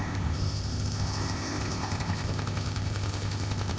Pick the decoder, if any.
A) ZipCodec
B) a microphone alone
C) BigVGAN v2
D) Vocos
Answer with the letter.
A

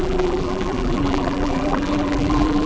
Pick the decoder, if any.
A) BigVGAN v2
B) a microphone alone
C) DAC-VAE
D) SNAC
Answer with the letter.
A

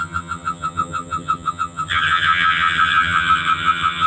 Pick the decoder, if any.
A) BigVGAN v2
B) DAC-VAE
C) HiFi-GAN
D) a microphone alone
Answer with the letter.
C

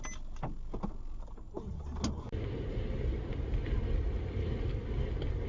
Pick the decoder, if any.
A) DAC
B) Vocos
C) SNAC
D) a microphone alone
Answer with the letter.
D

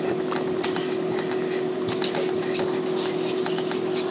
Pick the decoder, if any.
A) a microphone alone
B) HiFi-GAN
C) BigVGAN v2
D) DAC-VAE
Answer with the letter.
A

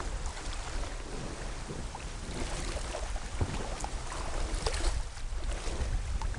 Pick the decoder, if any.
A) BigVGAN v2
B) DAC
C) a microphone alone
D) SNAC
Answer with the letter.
C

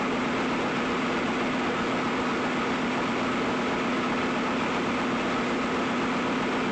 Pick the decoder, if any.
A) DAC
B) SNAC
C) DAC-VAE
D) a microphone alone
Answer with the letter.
D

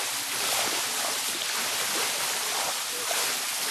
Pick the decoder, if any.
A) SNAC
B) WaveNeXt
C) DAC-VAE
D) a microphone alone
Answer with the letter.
D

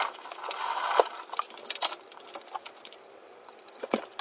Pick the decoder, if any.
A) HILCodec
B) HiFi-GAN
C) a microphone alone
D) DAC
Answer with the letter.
C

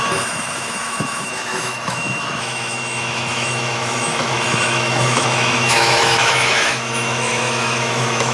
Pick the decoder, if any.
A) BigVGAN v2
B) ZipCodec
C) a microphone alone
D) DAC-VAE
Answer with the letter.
D